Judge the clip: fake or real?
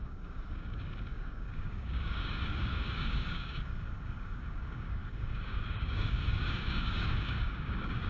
fake